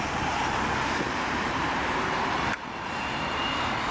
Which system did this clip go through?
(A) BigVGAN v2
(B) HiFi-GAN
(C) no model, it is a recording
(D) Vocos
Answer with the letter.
A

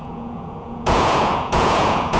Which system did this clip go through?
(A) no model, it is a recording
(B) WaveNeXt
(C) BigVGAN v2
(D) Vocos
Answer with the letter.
D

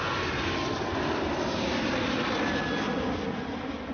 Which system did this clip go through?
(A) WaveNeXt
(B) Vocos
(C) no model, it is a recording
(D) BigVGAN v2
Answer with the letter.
C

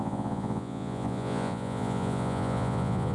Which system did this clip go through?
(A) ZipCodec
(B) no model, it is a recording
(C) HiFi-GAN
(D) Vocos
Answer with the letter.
D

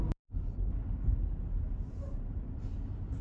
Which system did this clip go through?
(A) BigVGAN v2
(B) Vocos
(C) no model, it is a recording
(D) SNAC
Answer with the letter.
C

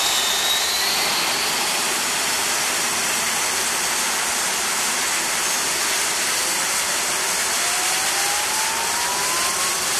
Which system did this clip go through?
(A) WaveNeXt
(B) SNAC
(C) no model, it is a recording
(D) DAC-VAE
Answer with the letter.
C